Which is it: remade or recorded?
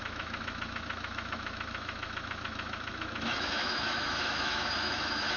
remade